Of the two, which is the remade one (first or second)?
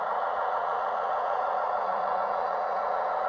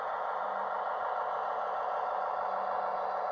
first